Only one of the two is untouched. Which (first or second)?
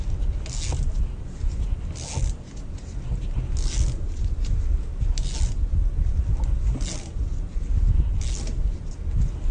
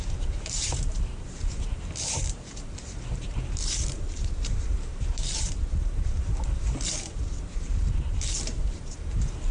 first